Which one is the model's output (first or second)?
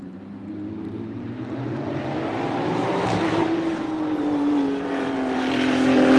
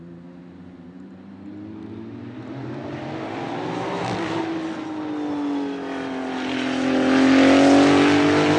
first